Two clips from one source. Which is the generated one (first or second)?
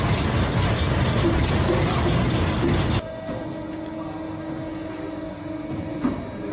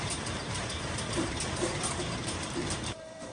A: second